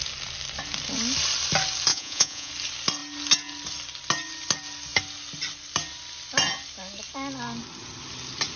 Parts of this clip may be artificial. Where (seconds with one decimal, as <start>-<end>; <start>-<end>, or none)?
1.9-2.5